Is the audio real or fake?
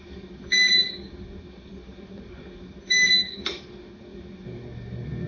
fake